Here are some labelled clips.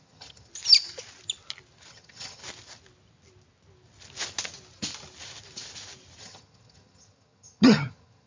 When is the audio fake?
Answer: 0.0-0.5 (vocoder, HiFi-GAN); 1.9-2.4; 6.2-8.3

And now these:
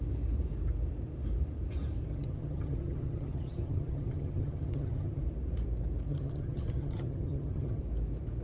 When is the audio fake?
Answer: 2.1-5.2 (vocoder, HiFi-GAN); 6.1-7.8

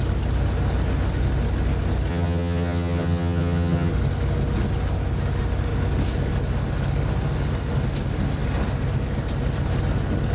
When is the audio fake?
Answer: 2.1-3.9 (vocoder, HiFi-GAN)

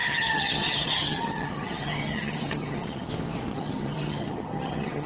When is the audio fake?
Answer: 0.0-3.1 (vocoder, HiFi-GAN); 3.5-5.1

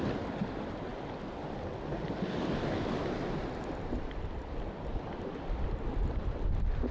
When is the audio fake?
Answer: none

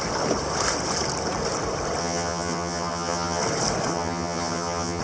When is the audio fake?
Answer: 2.0-3.4 (vocoder, HiFi-GAN); 3.9-5.0